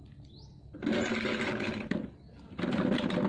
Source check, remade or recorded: recorded